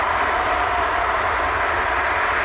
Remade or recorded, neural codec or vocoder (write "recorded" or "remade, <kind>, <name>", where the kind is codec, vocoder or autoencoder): recorded